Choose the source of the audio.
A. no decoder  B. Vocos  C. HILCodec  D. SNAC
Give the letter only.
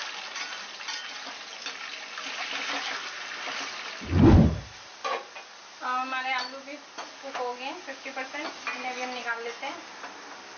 A